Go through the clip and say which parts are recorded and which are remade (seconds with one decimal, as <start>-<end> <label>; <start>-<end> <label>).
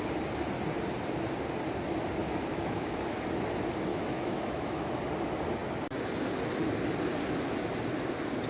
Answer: 0.0-2.2 recorded; 2.2-3.0 remade; 3.0-3.9 recorded; 3.9-5.0 remade; 5.0-8.5 recorded